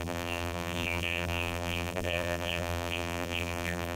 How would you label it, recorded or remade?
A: remade